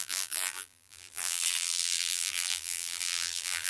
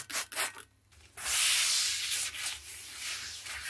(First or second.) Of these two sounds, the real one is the second